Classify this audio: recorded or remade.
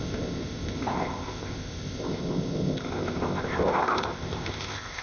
remade